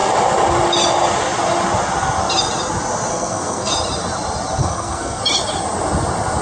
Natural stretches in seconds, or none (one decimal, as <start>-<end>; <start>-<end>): 0.0-3.1; 3.7-4.6; 5.2-6.4